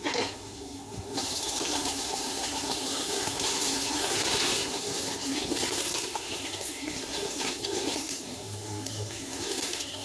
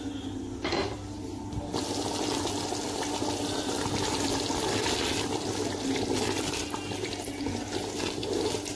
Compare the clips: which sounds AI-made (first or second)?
first